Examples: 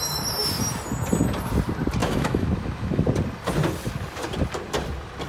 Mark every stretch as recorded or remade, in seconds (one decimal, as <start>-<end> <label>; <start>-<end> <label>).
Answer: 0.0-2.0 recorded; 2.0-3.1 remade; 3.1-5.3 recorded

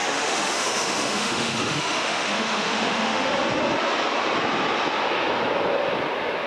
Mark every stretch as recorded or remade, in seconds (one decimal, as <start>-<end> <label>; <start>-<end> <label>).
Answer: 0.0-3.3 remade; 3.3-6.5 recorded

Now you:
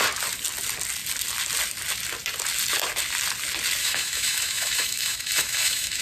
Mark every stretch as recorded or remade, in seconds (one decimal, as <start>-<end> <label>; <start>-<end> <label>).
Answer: 0.0-3.8 recorded; 3.8-6.0 remade